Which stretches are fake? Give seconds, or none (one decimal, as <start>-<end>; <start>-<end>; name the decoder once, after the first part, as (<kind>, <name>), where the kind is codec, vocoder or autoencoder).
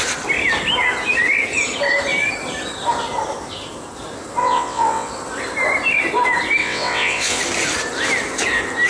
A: 4.4-5.1 (vocoder, WaveNeXt); 6.6-7.4